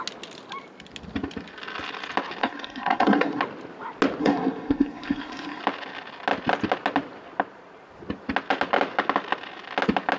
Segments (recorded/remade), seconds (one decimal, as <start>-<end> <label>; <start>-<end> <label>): 0.0-2.4 recorded; 2.4-3.4 remade; 3.4-4.2 recorded; 4.2-5.6 remade; 5.6-10.2 recorded